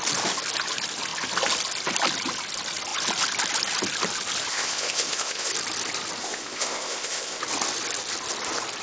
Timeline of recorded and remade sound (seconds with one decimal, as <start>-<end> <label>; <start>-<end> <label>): 0.0-4.5 recorded; 4.5-5.5 remade; 5.5-6.2 recorded; 6.2-7.4 remade; 7.4-8.8 recorded